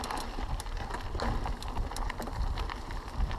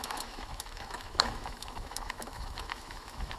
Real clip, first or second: first